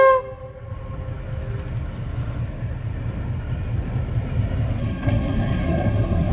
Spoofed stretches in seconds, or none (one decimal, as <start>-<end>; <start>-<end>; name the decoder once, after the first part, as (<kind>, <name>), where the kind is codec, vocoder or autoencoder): 4.8-6.3 (codec, SNAC)